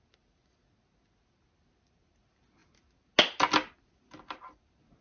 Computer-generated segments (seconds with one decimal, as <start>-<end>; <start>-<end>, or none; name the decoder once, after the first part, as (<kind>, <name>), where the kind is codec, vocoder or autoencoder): none